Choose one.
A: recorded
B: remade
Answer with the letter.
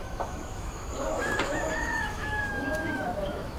B